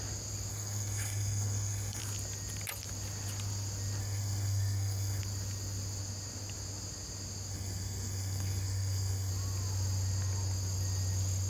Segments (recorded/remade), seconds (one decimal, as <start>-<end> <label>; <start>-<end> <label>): 0.0-0.5 recorded; 0.5-2.0 remade; 2.0-4.0 recorded; 4.0-5.2 remade; 5.2-7.5 recorded; 7.5-9.3 remade; 9.3-11.5 recorded

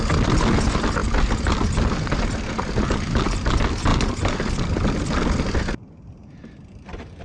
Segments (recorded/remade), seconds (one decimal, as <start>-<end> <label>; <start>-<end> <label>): 0.0-7.2 recorded

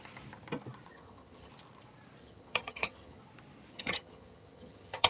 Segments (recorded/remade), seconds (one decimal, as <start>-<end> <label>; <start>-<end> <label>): 0.0-0.9 recorded; 0.9-1.5 remade; 1.5-2.2 recorded; 2.2-3.2 remade; 3.2-3.7 recorded; 3.7-5.1 remade

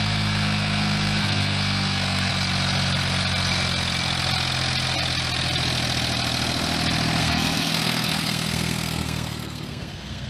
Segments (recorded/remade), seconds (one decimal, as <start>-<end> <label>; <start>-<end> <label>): 0.0-2.3 remade; 2.3-7.2 recorded; 7.2-10.3 remade